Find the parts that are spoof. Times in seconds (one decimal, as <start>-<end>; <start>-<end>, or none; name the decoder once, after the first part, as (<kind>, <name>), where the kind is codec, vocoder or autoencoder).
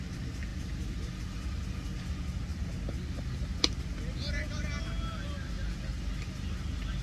none